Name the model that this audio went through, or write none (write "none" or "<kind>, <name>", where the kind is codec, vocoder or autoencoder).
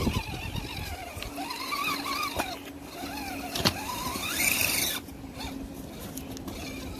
none